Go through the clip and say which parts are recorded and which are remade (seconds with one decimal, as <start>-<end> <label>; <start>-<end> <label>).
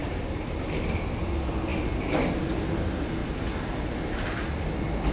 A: 0.0-0.6 remade; 0.6-5.1 recorded